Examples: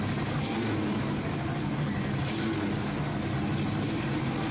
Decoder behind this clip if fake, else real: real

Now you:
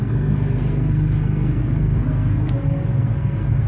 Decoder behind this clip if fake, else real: fake, codec, SNAC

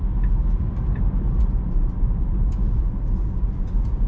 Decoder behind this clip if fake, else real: fake, vocoder, BigVGAN v2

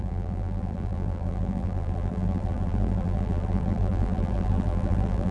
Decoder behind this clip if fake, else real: fake, vocoder, BigVGAN v2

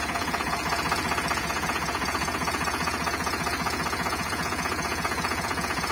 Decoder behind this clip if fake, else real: fake, vocoder, Vocos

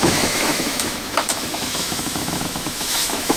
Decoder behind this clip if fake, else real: fake, autoencoder, DAC-VAE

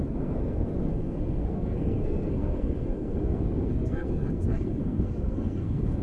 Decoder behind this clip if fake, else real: fake, codec, SNAC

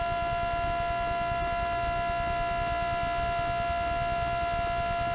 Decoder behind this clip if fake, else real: real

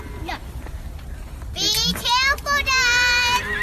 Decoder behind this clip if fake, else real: real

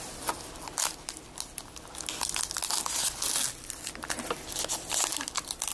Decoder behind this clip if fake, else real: real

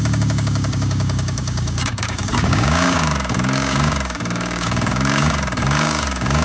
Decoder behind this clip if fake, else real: fake, codec, DAC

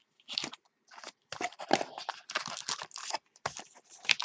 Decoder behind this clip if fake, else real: real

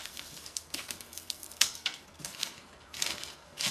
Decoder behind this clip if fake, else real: fake, codec, SNAC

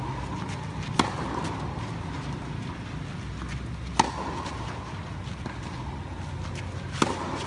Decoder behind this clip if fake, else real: real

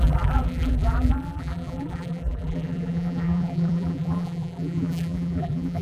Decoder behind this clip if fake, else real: fake, vocoder, BigVGAN v2